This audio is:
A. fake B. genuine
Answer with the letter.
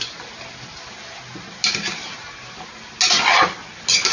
B